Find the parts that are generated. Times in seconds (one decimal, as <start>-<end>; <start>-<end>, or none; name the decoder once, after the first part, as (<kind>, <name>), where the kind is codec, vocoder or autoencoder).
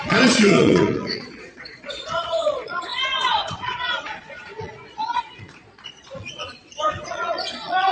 0.0-7.9 (vocoder, Vocos)